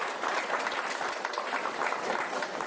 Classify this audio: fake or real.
fake